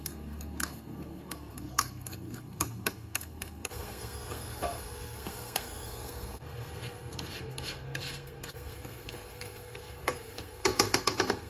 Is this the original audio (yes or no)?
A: no